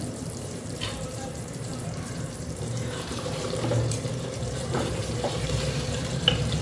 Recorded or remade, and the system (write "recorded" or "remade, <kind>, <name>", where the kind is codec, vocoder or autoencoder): remade, vocoder, BigVGAN v2